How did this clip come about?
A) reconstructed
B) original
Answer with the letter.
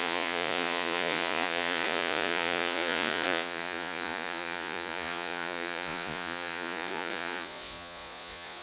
A